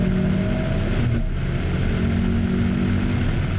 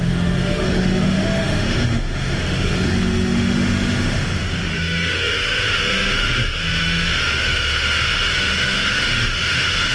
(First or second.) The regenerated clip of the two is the second